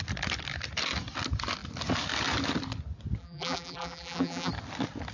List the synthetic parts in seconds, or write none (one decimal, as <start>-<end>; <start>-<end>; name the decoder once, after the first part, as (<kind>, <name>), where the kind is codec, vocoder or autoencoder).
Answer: 3.2-4.5 (vocoder, BigVGAN v2)